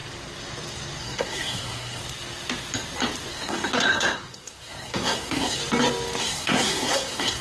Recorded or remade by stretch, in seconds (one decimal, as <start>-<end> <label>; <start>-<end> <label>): 0.0-1.0 recorded; 1.0-2.0 remade; 2.0-3.3 recorded; 3.3-5.6 remade; 5.6-6.2 recorded; 6.2-7.4 remade